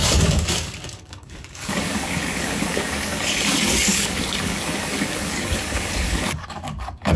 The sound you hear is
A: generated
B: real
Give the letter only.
A